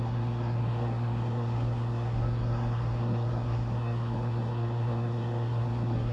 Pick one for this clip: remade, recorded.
remade